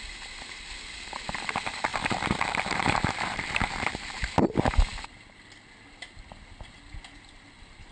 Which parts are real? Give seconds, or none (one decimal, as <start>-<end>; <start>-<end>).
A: 0.0-1.9; 4.3-7.9